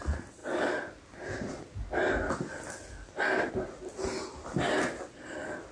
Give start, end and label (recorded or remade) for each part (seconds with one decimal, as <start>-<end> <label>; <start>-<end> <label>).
0.0-5.7 recorded